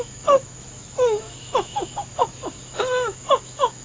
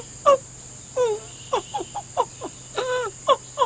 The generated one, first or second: first